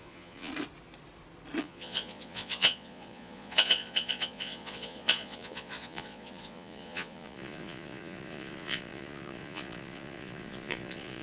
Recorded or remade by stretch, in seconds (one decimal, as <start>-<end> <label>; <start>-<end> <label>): 0.0-0.5 remade; 0.5-1.6 recorded; 1.6-11.2 remade